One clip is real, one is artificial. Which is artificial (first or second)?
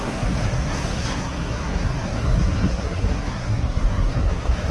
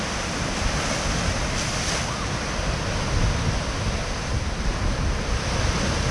first